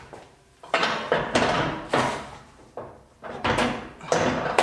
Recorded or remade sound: remade